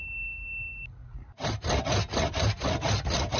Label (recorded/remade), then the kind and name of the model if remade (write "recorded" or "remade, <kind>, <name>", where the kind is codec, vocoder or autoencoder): recorded